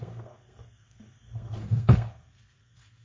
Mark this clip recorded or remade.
remade